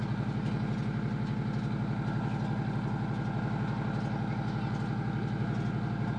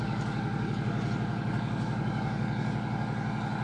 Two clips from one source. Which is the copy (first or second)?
second